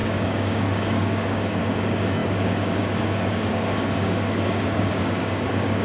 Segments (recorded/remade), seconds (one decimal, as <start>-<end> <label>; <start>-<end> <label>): 0.0-5.8 remade